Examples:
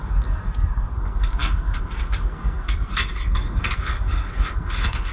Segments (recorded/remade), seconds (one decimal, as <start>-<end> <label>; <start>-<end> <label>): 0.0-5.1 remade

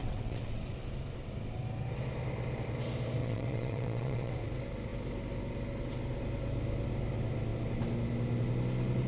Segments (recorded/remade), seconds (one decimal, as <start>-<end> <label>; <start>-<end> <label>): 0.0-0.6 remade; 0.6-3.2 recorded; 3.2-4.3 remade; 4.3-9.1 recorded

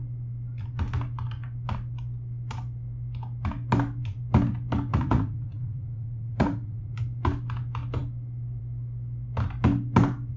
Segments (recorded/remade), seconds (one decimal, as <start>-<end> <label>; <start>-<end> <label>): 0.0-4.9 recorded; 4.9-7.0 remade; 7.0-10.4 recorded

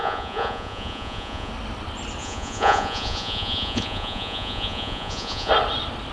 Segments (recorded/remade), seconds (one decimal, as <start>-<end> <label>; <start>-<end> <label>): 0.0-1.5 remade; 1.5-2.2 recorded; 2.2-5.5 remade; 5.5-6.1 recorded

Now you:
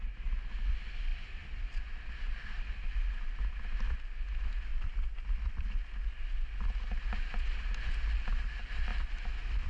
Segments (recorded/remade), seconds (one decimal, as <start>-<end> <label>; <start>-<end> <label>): 0.0-1.1 recorded; 1.1-2.1 remade; 2.1-8.9 recorded; 8.9-9.7 remade

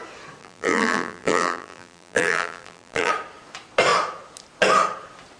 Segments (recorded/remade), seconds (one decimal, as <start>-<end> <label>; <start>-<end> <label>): 0.0-0.4 recorded; 0.4-3.1 remade; 3.1-5.4 recorded

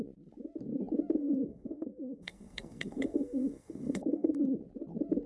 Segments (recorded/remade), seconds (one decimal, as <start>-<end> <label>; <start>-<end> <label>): 0.0-1.2 recorded; 1.2-4.4 remade; 4.4-5.3 recorded